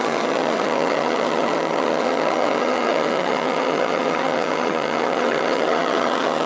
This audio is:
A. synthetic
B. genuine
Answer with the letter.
A